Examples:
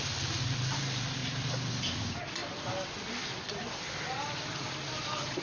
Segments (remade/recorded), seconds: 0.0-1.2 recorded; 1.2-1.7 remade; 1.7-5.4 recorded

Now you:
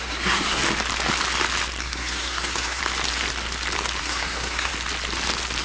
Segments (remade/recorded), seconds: 0.0-0.6 remade; 0.6-1.8 recorded; 1.8-2.8 remade; 2.8-4.0 recorded; 4.0-4.7 remade; 4.7-5.6 recorded

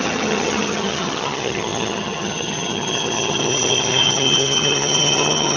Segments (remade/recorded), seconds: 0.0-5.6 remade

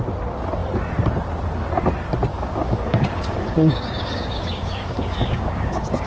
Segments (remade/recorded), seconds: 0.0-2.3 recorded; 2.3-6.1 remade

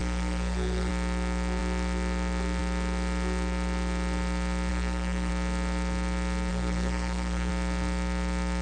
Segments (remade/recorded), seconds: 0.0-0.9 remade; 0.9-4.7 recorded; 4.7-5.3 remade; 5.3-6.5 recorded; 6.5-7.5 remade; 7.5-8.6 recorded

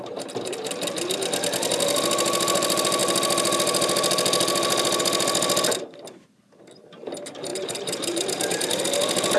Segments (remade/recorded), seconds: 0.0-7.5 recorded; 7.5-8.8 remade; 8.8-9.4 recorded

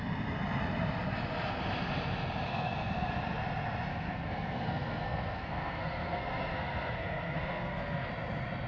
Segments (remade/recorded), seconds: 0.0-2.5 recorded; 2.5-3.1 remade; 3.1-3.9 recorded; 3.9-8.1 remade; 8.1-8.7 recorded

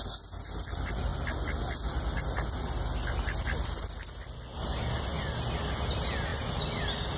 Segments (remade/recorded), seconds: 0.0-1.1 recorded; 1.1-2.5 remade; 2.5-6.3 recorded; 6.3-6.8 remade; 6.8-7.2 recorded